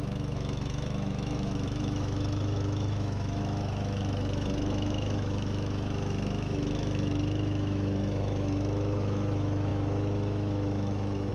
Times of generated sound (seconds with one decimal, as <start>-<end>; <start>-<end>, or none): 0.0-11.3